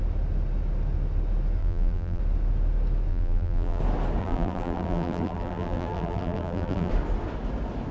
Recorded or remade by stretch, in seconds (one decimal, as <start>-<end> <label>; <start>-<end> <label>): 0.0-1.6 recorded; 1.6-2.2 remade; 2.2-3.1 recorded; 3.1-3.8 remade; 3.8-4.2 recorded; 4.2-6.9 remade; 6.9-7.9 recorded